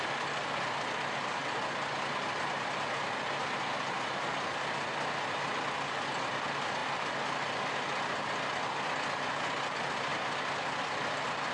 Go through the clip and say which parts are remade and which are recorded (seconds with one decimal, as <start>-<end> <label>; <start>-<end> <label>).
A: 0.0-11.5 recorded